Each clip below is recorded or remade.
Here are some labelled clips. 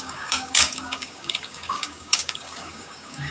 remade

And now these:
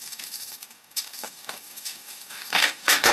remade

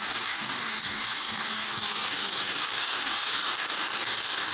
remade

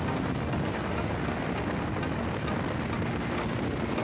recorded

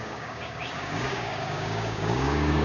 remade